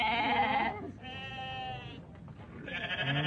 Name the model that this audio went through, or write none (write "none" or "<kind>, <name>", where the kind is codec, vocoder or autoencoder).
none